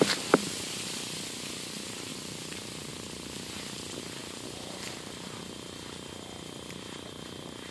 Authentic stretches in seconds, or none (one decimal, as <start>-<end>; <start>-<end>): 0.0-2.1; 2.9-4.2; 5.4-7.7